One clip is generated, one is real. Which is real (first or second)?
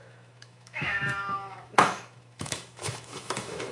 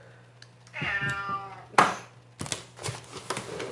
second